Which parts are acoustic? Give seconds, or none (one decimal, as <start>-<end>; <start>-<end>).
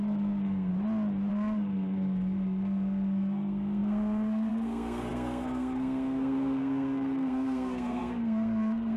0.7-1.3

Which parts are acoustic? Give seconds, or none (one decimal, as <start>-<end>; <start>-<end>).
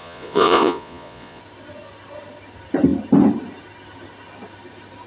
1.4-5.1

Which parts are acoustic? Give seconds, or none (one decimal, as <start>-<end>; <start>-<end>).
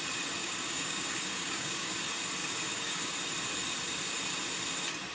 0.0-0.4; 1.9-2.4; 3.1-5.1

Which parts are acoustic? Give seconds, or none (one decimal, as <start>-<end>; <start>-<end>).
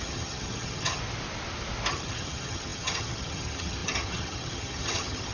1.0-1.9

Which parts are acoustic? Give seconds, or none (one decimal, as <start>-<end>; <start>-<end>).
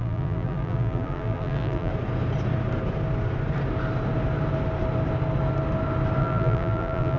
1.9-6.2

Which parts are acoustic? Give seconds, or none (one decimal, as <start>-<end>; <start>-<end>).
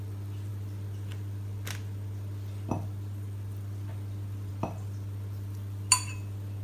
0.0-6.6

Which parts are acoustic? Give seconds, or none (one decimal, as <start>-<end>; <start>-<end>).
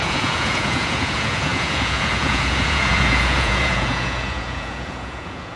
none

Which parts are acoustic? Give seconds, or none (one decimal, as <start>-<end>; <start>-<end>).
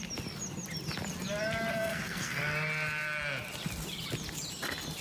0.0-1.7; 2.4-5.0